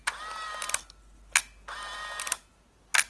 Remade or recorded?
recorded